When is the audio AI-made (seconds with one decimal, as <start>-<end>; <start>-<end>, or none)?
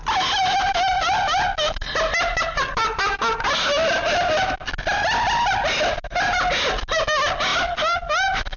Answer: none